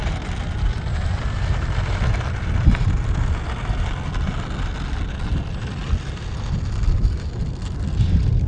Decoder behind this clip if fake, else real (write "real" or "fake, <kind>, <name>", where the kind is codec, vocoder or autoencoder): real